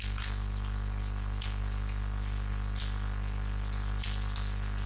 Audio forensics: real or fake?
real